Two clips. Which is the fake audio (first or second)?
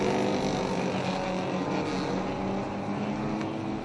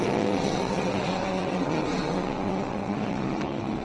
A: second